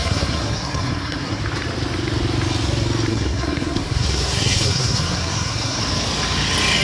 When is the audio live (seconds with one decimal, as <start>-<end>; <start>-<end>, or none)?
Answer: 1.4-3.1; 5.8-6.8